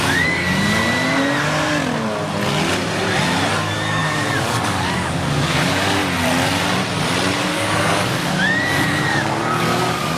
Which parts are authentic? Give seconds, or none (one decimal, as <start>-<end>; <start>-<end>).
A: 0.8-3.5; 6.0-7.4